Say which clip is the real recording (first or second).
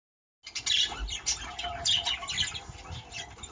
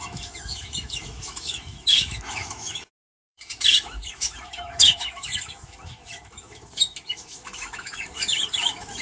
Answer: first